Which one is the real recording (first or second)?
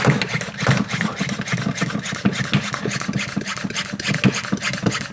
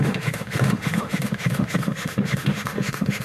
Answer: first